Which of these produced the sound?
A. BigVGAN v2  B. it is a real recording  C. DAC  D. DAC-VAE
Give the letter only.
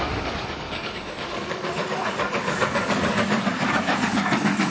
C